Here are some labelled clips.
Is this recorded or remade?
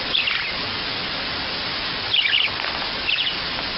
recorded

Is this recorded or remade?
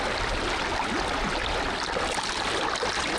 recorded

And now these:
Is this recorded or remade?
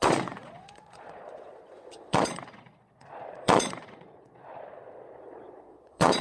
remade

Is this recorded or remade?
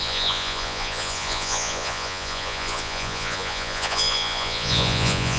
remade